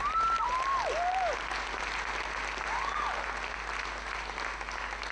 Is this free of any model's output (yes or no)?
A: yes